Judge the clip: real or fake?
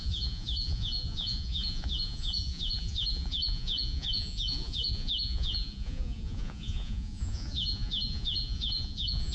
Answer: fake